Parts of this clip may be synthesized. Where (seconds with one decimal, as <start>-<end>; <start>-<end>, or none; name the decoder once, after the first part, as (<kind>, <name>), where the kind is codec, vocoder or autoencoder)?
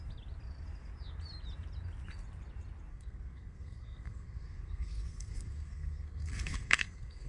2.9-7.3 (codec, SNAC)